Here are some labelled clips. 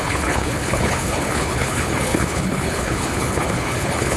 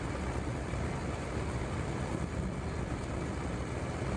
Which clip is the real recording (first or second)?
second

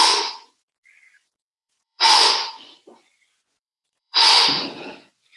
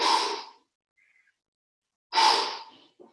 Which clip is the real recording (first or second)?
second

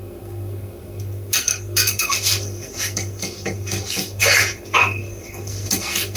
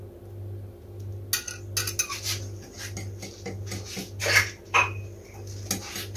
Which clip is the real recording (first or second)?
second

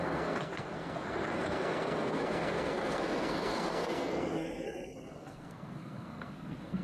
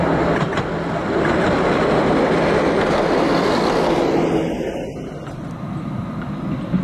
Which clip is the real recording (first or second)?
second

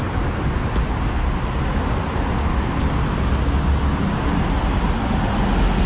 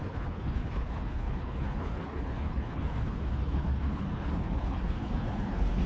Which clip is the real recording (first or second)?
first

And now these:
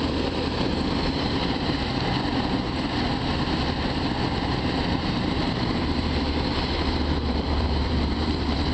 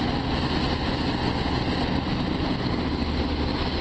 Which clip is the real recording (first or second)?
second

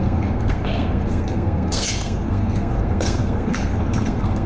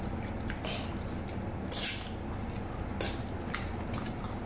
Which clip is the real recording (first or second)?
second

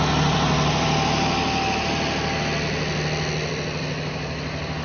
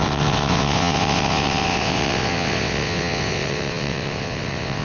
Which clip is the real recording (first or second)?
first